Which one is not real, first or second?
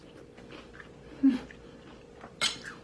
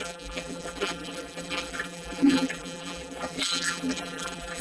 second